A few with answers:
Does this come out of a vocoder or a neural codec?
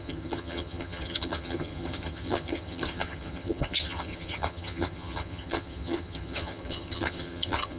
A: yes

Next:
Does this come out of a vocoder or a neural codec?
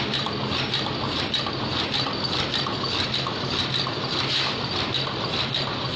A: no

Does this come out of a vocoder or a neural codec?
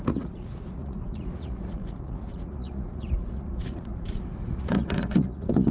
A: yes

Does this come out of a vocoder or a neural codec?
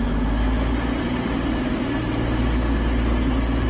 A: no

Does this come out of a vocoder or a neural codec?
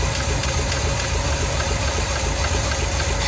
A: no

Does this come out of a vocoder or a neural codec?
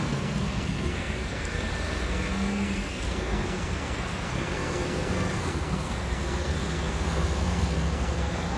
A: yes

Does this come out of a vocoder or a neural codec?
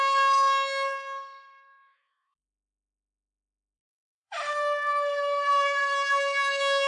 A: yes